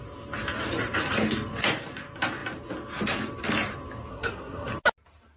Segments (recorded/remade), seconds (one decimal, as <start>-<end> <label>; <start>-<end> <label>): 0.0-4.1 recorded; 4.1-4.7 remade; 4.7-5.4 recorded